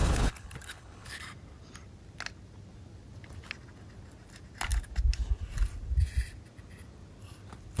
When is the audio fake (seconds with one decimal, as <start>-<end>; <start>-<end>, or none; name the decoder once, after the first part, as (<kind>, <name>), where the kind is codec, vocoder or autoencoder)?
0.0-1.2 (codec, HILCodec)